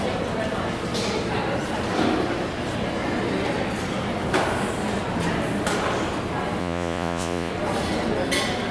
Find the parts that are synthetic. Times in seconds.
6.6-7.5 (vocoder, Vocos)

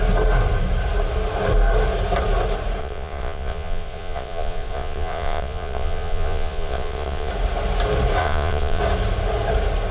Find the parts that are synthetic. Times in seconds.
2.8-7.3 (vocoder, Vocos); 8.2-8.8

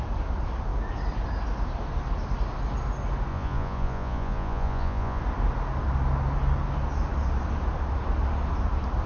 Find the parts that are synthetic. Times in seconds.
3.3-5.2 (vocoder, Vocos)

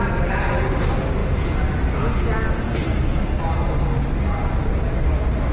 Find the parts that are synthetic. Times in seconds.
none

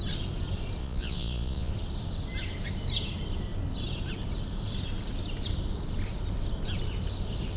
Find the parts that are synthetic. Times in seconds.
0.8-1.7 (vocoder, Vocos)